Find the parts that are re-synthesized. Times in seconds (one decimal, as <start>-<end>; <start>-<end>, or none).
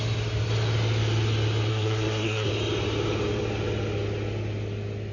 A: 1.7-2.5